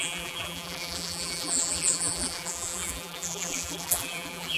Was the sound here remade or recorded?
remade